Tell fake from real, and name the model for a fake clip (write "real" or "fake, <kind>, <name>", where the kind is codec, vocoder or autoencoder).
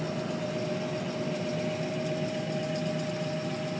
real